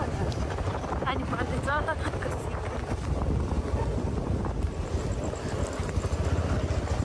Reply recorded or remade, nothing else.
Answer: recorded